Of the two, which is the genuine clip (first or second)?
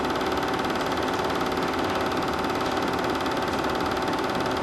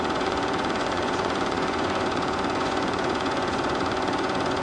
first